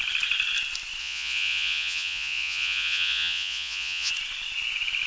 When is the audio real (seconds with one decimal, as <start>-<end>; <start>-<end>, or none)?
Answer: 0.0-1.0; 4.1-5.1